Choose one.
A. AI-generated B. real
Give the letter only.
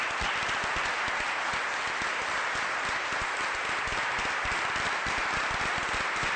B